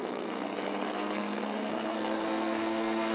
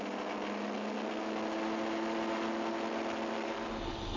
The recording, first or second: second